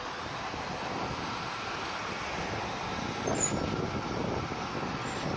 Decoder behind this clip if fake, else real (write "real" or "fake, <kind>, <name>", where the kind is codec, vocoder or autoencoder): real